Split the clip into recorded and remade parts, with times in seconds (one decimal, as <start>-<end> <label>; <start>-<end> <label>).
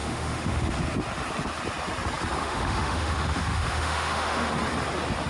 0.0-0.7 remade; 0.7-2.4 recorded; 2.4-4.5 remade; 4.5-5.3 recorded